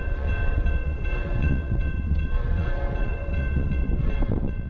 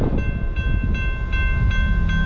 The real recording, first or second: second